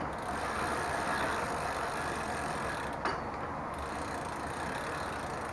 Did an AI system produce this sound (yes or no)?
no